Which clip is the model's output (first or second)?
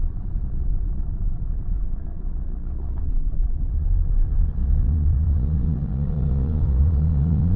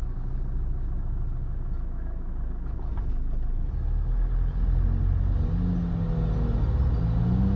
first